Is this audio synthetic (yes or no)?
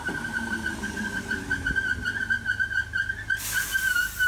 no